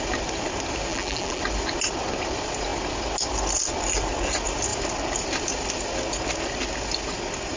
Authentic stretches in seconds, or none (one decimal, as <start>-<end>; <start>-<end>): 0.0-0.9; 1.4-7.6